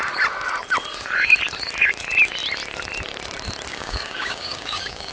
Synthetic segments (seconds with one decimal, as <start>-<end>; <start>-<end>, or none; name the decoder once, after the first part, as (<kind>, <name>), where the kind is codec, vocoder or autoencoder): 3.7-5.1 (codec, DAC)